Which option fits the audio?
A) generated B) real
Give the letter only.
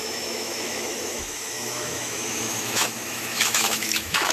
A